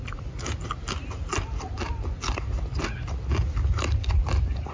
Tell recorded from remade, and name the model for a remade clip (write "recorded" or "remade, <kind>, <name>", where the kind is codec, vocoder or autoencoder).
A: recorded